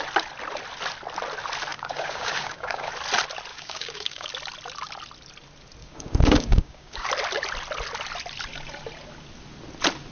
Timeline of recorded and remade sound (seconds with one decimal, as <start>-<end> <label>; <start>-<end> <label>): 0.0-1.7 recorded; 1.7-2.9 remade; 2.9-3.5 recorded; 3.5-4.3 remade; 4.3-5.8 recorded; 5.8-7.1 remade; 7.1-10.1 recorded